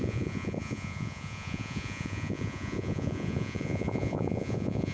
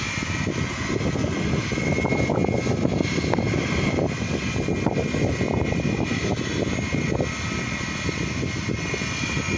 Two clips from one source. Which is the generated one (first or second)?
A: first